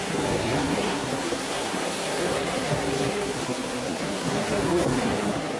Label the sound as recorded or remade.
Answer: remade